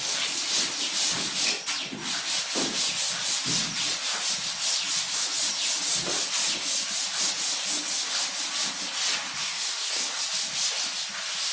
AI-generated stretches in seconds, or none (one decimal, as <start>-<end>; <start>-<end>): 9.4-10.0